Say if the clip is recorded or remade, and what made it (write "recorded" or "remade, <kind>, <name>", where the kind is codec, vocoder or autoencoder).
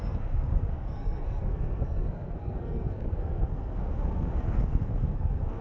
remade, codec, SNAC